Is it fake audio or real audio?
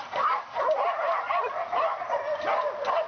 real